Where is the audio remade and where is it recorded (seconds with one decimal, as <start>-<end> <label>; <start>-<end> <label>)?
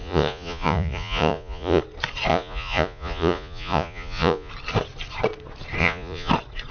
0.0-1.8 remade; 1.8-2.3 recorded; 2.3-4.5 remade; 4.5-5.8 recorded; 5.8-6.3 remade; 6.3-6.7 recorded